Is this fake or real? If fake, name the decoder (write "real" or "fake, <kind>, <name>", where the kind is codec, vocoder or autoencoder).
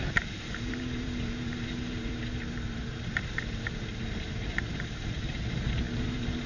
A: fake, vocoder, BigVGAN v2